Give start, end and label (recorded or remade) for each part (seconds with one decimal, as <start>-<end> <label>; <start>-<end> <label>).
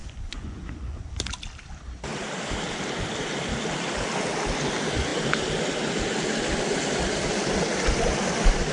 0.0-1.1 remade; 1.1-8.7 recorded